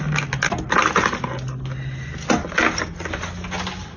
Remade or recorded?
recorded